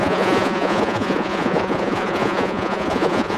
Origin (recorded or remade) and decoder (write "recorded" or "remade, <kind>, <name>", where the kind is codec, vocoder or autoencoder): remade, vocoder, Vocos